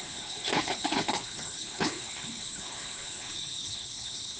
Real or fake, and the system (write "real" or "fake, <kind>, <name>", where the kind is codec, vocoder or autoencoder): fake, codec, HILCodec